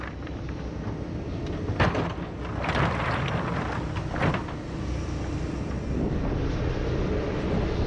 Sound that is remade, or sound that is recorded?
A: recorded